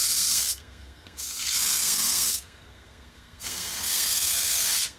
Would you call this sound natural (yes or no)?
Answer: no